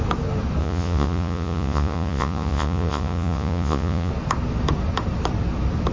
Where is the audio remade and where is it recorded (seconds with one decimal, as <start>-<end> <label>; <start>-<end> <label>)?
0.0-0.6 recorded; 0.6-4.1 remade; 4.1-5.9 recorded